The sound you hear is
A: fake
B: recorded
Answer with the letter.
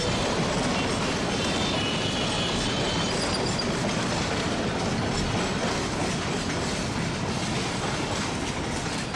B